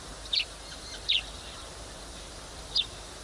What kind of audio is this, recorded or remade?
remade